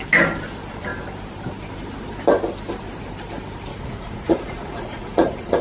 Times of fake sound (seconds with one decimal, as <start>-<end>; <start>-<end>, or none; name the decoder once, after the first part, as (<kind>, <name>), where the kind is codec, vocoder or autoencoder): 3.7-5.6 (vocoder, Vocos)